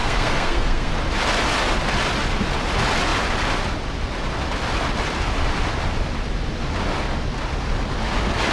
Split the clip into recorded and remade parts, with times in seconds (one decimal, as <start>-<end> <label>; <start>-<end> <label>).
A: 0.0-0.9 remade; 0.9-8.5 recorded